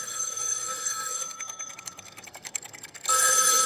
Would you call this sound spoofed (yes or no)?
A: yes